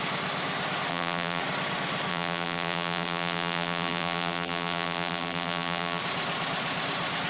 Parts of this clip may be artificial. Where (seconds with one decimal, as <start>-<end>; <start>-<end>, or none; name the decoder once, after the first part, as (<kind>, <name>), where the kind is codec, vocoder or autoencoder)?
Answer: 0.9-1.4 (vocoder, BigVGAN v2); 2.1-6.0